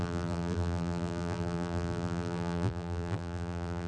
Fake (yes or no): yes